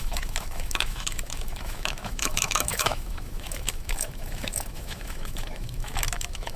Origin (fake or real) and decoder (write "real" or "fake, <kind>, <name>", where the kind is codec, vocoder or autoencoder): fake, autoencoder, DAC-VAE